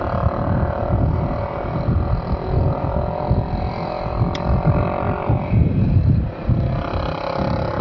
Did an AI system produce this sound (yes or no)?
no